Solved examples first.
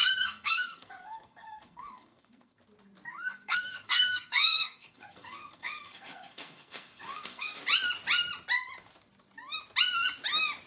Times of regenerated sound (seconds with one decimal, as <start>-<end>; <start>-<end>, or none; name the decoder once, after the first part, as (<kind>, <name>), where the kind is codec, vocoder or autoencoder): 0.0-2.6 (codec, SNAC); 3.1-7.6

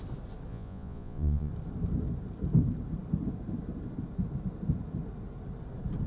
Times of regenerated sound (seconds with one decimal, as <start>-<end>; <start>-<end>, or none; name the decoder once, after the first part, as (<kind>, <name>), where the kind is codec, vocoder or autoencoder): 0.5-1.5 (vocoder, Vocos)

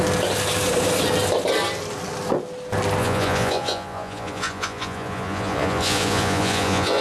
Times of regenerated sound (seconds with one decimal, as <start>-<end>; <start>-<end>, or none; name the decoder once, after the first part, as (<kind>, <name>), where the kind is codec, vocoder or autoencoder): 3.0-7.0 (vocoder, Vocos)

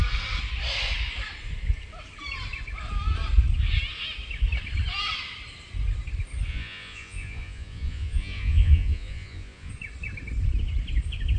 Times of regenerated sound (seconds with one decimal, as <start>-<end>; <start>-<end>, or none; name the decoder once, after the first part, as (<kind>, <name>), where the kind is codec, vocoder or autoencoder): 6.5-9.7 (vocoder, Vocos)

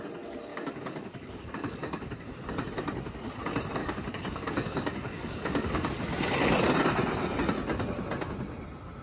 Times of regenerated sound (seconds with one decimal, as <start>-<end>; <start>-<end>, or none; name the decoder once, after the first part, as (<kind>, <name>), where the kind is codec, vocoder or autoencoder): 0.5-2.3 (codec, DAC); 3.8-5.9

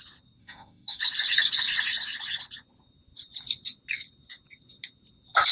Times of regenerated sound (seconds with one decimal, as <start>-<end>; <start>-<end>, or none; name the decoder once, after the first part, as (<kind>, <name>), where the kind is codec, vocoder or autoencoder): 0.4-1.0 (autoencoder, DAC-VAE)

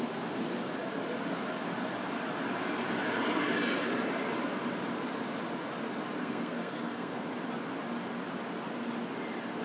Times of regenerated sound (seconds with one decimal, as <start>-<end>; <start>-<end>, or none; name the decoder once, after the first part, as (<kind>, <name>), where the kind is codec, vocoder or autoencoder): 6.2-7.3 (codec, SNAC)